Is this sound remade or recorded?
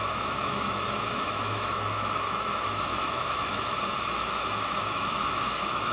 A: remade